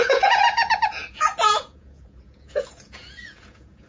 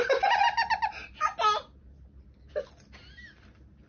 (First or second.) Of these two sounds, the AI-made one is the first